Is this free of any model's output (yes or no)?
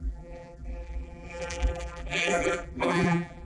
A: no